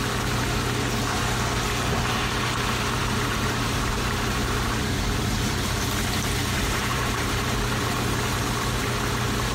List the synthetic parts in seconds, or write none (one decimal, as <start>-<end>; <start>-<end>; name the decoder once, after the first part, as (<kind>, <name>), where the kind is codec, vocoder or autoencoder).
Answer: 3.0-7.4 (vocoder, BigVGAN v2)